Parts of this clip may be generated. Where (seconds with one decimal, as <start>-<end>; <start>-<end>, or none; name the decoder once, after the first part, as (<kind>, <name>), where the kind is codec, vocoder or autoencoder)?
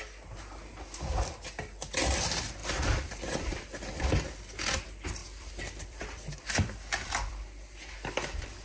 2.6-3.3 (vocoder, BigVGAN v2); 5.2-7.3